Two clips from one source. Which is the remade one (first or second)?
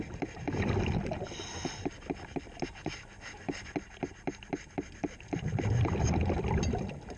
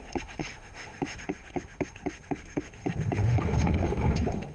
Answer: second